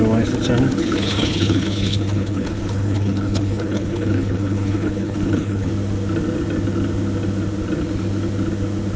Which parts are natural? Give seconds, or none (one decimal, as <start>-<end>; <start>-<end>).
0.0-0.8; 5.7-9.0